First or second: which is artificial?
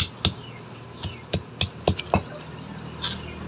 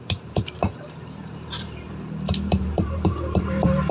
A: second